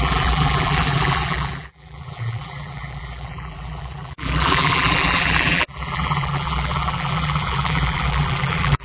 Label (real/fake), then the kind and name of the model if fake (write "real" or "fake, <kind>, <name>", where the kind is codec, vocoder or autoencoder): fake, vocoder, BigVGAN v2